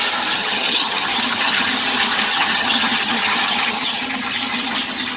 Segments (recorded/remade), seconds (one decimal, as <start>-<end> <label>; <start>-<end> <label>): 0.0-0.4 recorded; 0.4-1.7 remade; 1.7-2.3 recorded; 2.3-4.0 remade; 4.0-5.2 recorded